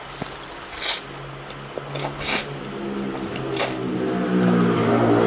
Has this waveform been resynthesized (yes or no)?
no